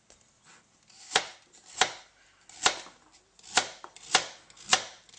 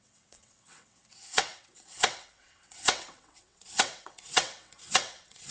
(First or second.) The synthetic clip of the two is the second